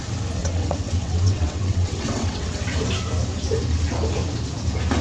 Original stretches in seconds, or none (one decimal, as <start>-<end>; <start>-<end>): 0.0-0.4; 2.8-5.0